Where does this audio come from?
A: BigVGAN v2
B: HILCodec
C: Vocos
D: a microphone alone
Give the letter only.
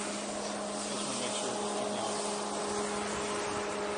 D